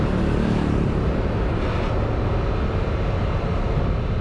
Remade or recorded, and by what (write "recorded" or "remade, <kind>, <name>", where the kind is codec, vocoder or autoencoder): recorded